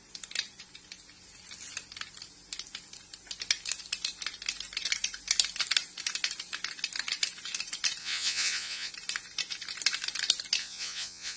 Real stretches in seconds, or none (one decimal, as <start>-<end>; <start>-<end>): 0.0-8.0; 8.9-10.6